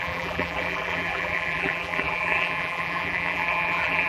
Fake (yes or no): yes